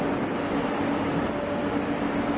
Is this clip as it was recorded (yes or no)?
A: yes